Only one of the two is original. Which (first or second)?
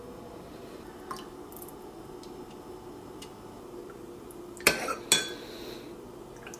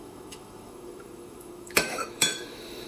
first